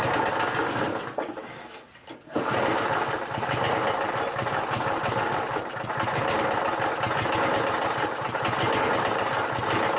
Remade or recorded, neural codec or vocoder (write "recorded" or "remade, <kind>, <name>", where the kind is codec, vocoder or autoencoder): recorded